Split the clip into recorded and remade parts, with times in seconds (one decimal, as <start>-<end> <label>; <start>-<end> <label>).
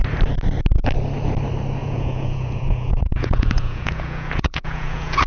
0.0-1.8 recorded; 1.8-5.3 remade